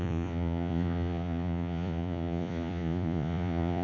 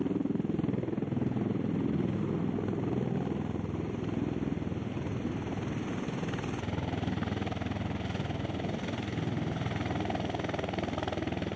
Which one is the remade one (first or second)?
first